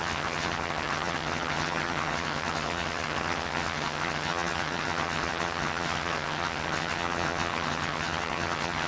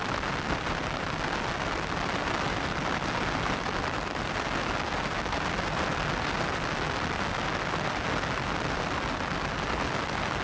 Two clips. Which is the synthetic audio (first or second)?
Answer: first